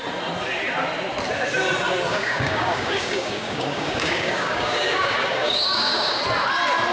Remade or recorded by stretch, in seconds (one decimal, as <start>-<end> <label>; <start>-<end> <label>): 0.0-2.1 recorded; 2.1-6.2 remade; 6.2-6.9 recorded